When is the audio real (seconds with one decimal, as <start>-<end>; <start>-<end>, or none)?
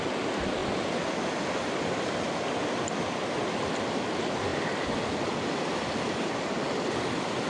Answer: 0.0-7.5